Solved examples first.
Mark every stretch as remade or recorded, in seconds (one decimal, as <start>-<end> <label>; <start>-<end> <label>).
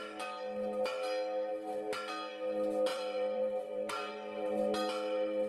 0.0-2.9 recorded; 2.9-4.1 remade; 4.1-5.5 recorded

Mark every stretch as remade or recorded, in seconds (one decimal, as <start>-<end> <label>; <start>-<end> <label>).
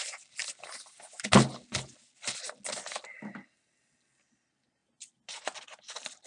0.0-6.3 recorded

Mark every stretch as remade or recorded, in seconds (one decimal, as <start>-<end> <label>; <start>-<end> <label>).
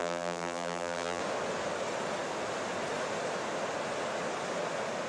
0.0-1.2 remade; 1.2-5.1 recorded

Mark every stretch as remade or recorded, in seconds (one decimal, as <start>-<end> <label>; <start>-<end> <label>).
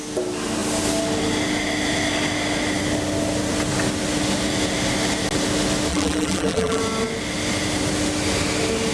0.0-5.9 recorded; 5.9-6.8 remade; 6.8-8.9 recorded